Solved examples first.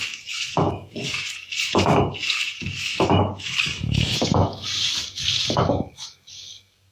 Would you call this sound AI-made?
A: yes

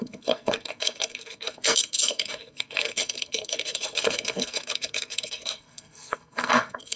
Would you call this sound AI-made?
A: yes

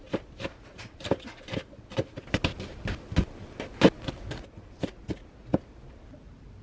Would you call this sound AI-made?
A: no